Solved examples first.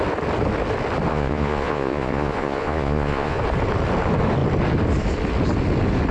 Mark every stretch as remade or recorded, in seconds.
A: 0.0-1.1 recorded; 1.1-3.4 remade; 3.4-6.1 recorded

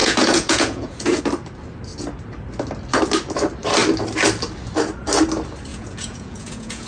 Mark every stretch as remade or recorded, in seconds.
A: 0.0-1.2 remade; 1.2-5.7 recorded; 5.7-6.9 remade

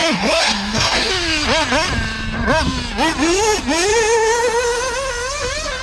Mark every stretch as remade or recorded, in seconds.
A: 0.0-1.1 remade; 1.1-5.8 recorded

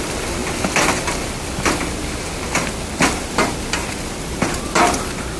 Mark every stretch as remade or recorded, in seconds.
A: 0.0-5.4 recorded

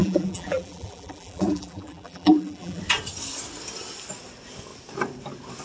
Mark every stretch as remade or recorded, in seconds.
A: 0.0-2.8 remade; 2.8-5.6 recorded

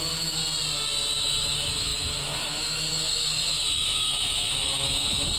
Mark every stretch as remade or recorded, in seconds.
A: 0.0-0.4 remade; 0.4-1.2 recorded; 1.2-5.4 remade